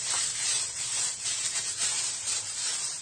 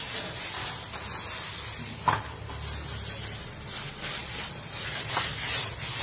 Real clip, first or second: second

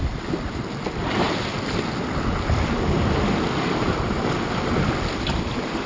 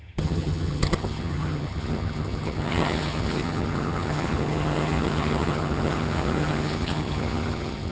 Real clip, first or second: first